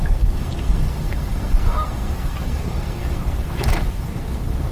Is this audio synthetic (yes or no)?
yes